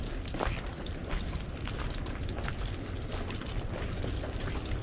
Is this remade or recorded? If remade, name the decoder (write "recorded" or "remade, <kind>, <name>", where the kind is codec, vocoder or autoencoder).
recorded